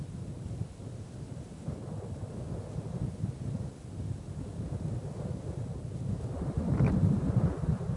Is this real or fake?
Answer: real